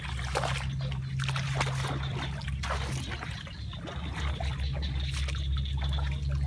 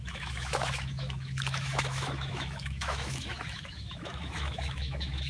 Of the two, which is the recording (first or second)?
first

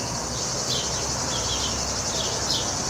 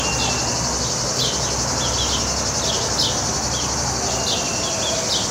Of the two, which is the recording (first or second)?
second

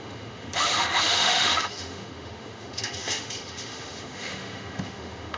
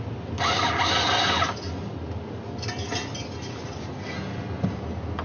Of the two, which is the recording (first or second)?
second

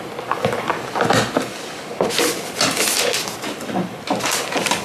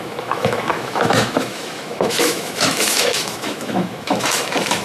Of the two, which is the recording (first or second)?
first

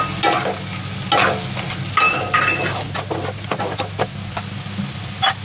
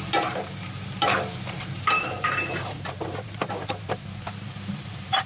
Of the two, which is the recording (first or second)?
first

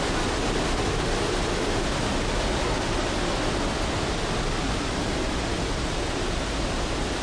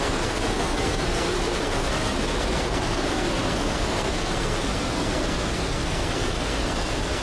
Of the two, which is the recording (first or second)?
first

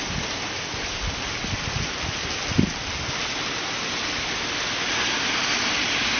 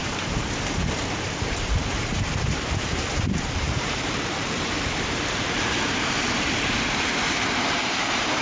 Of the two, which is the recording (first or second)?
first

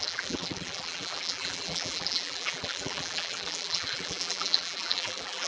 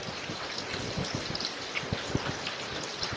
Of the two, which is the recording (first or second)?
second